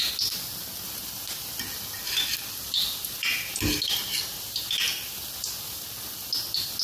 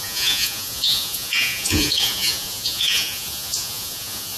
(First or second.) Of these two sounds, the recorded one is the first